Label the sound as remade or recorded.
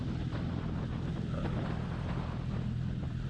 recorded